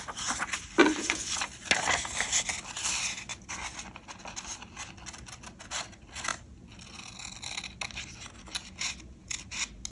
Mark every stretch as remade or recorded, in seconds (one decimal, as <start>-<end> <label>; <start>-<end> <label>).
0.0-0.8 recorded; 0.8-1.3 remade; 1.3-9.9 recorded

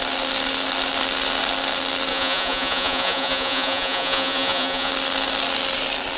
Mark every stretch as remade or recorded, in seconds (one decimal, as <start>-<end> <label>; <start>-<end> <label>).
0.0-2.1 recorded; 2.1-4.9 remade; 4.9-6.2 recorded

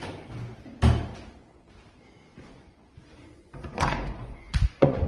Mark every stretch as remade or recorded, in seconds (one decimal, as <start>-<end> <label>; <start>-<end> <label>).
0.0-1.1 recorded; 1.1-1.7 remade; 1.7-2.3 recorded; 2.3-5.1 remade

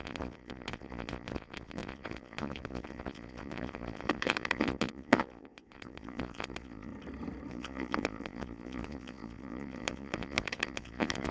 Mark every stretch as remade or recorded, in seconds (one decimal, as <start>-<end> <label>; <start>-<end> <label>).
0.0-6.9 remade; 6.9-7.5 recorded; 7.5-11.3 remade

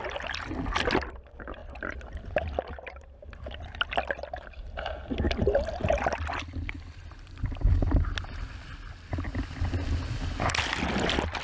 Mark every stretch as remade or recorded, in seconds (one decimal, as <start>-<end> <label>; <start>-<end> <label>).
0.0-11.4 recorded